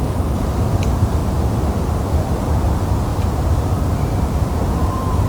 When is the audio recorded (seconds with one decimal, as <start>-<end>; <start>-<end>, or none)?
0.0-5.3